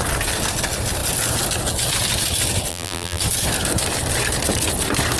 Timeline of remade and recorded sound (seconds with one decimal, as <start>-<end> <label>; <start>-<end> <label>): 0.0-2.7 recorded; 2.7-3.2 remade; 3.2-5.2 recorded